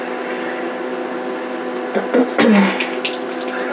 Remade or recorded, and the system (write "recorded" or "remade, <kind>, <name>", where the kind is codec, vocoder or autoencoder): recorded